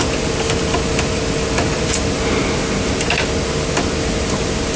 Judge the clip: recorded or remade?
recorded